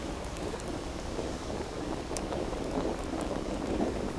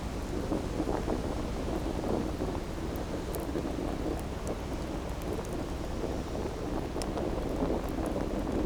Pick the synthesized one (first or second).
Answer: first